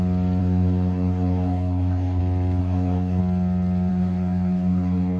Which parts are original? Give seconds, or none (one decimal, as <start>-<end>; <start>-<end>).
0.0-0.4; 2.2-2.6; 3.2-3.9